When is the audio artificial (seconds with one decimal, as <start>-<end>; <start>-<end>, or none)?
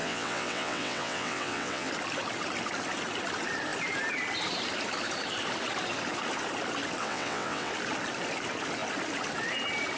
0.0-1.9; 7.0-7.7